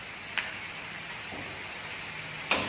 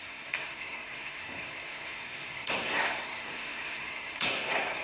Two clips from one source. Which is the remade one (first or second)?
second